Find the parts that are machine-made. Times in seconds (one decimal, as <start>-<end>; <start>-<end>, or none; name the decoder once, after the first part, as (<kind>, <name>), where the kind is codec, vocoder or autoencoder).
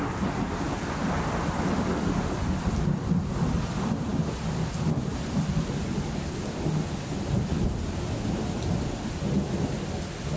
none